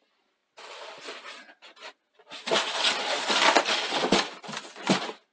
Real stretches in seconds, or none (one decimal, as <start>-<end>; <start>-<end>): 0.0-0.4; 1.0-5.3